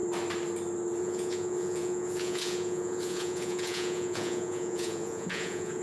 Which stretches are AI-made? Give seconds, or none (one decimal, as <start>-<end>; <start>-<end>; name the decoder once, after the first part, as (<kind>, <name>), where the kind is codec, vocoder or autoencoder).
1.0-5.8 (vocoder, Vocos)